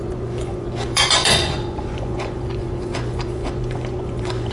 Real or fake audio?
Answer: fake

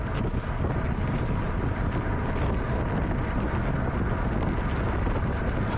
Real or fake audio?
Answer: real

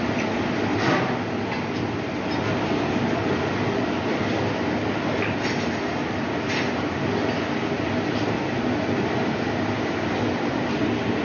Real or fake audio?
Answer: real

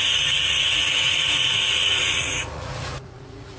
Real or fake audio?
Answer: fake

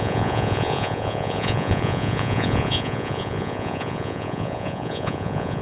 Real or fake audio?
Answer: fake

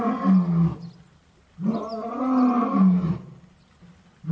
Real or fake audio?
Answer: real